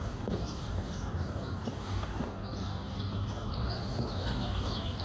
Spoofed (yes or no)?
yes